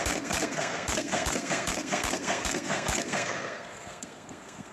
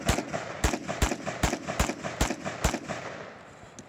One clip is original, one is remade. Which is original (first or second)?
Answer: second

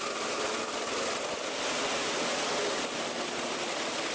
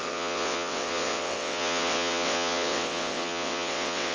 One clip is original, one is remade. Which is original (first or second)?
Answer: first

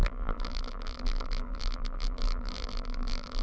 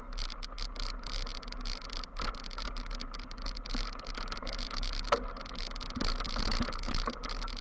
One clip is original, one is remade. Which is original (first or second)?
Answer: second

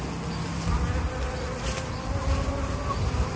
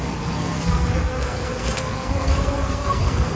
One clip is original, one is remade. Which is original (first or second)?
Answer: first